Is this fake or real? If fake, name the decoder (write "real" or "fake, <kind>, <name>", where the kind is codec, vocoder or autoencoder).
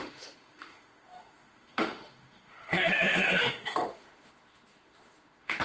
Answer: fake, autoencoder, DAC-VAE